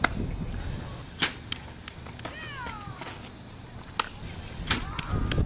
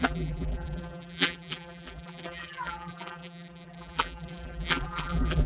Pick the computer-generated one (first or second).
second